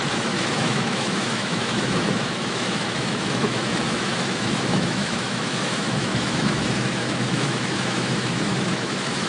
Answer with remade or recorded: remade